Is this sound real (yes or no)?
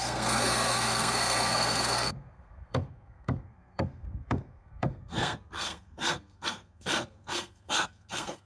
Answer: no